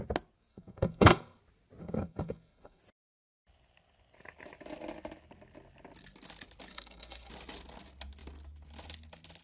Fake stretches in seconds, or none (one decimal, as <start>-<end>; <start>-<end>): 0.5-1.4; 1.8-2.8; 6.7-7.3